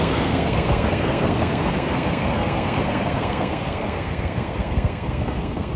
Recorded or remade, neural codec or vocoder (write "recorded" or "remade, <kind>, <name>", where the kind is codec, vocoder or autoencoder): remade, codec, SNAC